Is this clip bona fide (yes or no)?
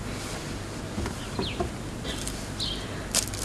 yes